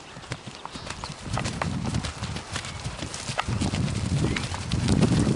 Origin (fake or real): fake